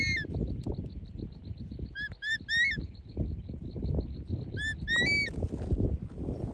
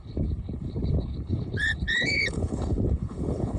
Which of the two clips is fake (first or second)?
second